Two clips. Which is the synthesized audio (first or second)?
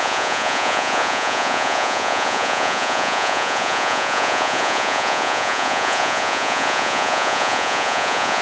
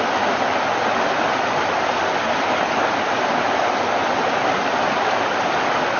first